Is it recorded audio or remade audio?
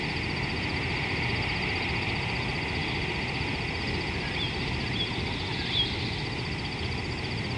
recorded